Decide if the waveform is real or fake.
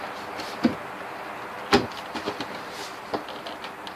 real